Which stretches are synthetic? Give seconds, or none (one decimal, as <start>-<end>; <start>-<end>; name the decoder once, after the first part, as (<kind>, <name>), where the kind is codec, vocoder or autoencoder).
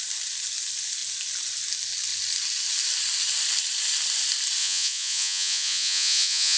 4.6-6.6 (vocoder, Vocos)